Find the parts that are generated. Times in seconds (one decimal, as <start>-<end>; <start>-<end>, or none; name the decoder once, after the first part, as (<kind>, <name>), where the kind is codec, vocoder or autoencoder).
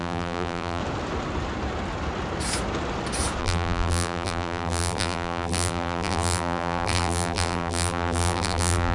0.0-0.8 (vocoder, BigVGAN v2); 3.4-8.9